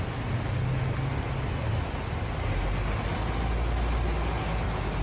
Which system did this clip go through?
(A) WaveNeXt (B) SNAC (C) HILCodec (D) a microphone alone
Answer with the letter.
D